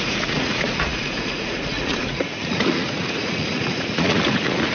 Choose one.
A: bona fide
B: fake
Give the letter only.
B